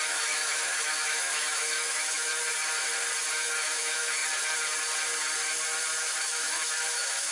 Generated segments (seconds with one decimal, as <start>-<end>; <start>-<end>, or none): 0.0-2.3; 3.3-4.2; 6.2-7.3